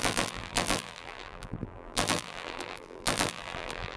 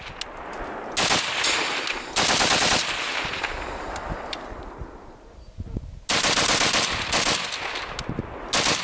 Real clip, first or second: second